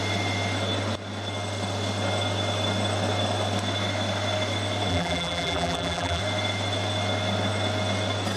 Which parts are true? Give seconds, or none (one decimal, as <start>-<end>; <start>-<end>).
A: 0.0-4.9; 6.2-8.4